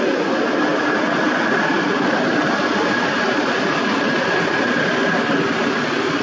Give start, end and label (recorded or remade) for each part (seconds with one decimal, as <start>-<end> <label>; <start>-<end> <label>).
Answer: 0.0-6.2 recorded